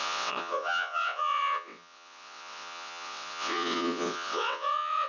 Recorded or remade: remade